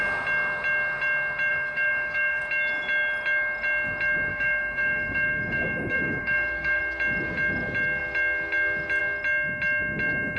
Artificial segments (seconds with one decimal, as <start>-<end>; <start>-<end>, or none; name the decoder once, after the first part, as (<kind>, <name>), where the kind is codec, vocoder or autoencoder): 1.5-2.4 (codec, DAC); 4.3-6.8